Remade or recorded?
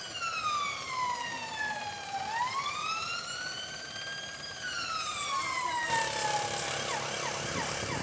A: recorded